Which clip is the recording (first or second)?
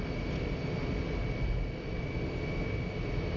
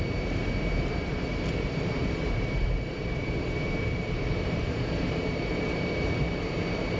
first